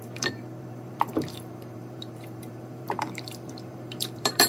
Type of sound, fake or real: fake